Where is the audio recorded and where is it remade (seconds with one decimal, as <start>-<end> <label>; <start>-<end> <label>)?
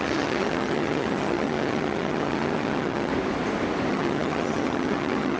0.0-3.1 remade; 3.1-3.9 recorded; 3.9-5.4 remade